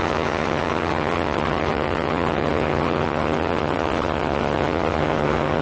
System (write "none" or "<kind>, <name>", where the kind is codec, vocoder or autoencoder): vocoder, HiFi-GAN